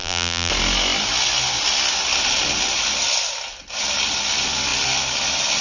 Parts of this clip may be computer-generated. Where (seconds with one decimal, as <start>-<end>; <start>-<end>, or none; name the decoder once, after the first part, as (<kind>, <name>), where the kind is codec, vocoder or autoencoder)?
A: 0.0-0.5 (vocoder, BigVGAN v2)

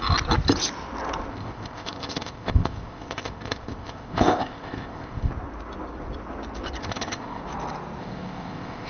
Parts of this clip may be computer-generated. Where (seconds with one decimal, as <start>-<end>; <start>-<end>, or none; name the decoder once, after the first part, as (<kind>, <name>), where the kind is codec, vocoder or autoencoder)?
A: 1.3-5.3 (codec, ZipCodec); 6.8-7.4; 8.0-8.9

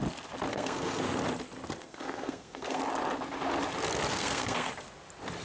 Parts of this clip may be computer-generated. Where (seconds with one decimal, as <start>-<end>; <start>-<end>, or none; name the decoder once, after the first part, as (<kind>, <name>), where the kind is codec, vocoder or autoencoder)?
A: 0.5-1.0 (codec, SNAC); 1.8-2.8; 4.1-4.7